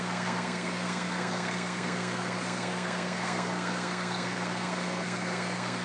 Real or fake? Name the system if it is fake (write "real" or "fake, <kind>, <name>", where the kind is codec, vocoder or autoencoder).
fake, codec, SNAC